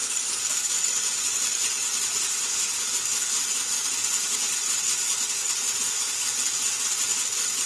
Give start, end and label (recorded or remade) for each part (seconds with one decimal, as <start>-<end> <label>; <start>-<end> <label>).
0.0-7.7 recorded